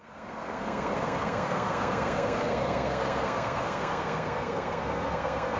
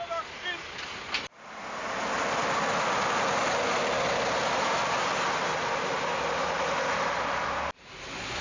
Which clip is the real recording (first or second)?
second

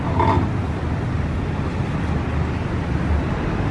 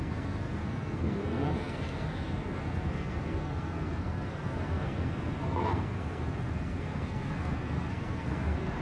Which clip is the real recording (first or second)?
first